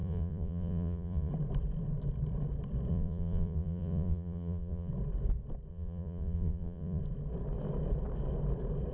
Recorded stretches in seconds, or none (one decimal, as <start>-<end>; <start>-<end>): 1.3-2.9; 4.9-5.7; 7.0-8.9

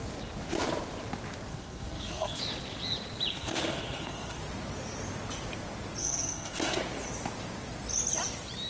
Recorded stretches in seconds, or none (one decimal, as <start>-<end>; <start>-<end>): 0.0-1.5; 2.4-3.3; 4.4-6.0; 6.8-8.7

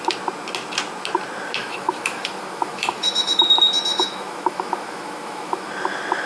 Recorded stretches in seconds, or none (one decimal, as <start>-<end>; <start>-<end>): 0.0-1.6; 3.4-3.9; 5.7-6.3

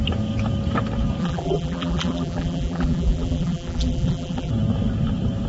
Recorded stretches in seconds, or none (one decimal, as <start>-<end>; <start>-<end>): 0.0-1.2; 4.5-5.5